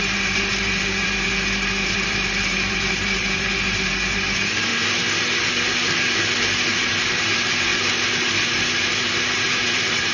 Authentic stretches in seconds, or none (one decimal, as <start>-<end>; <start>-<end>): 4.7-6.7; 7.7-9.3